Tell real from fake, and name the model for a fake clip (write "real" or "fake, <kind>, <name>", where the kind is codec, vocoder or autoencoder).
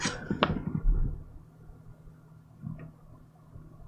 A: real